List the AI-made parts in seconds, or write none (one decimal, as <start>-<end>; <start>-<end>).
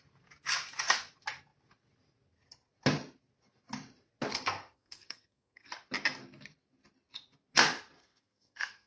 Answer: 4.3-5.7; 8.0-8.9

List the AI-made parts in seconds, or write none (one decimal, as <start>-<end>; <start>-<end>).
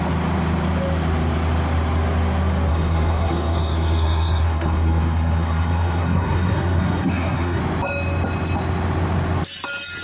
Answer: 2.7-7.6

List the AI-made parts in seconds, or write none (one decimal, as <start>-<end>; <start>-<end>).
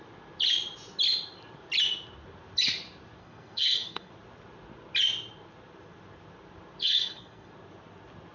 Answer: 3.2-4.1; 6.8-7.5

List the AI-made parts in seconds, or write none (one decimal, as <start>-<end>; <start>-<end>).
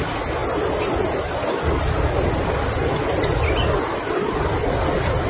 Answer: none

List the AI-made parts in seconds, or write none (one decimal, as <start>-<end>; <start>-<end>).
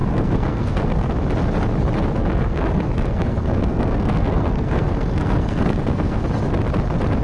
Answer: 0.0-1.1; 2.2-6.2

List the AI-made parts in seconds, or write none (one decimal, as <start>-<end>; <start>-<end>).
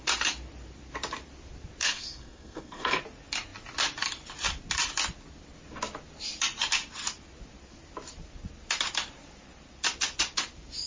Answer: 1.8-3.0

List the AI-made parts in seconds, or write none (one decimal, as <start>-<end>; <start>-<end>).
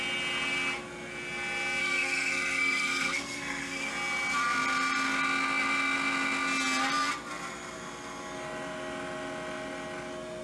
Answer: 1.8-3.9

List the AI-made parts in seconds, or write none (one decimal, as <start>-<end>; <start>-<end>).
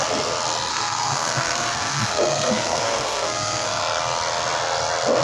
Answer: 0.7-3.8